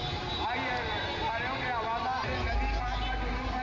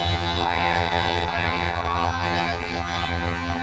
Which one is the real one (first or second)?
first